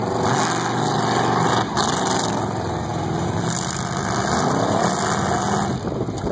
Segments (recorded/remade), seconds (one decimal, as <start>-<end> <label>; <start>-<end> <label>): 0.0-2.9 recorded; 2.9-4.9 remade; 4.9-6.3 recorded